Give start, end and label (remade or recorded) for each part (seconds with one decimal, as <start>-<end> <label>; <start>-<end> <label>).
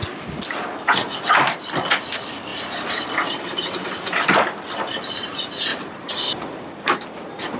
0.0-2.5 recorded; 2.5-3.1 remade; 3.1-5.7 recorded; 5.7-6.9 remade; 6.9-7.6 recorded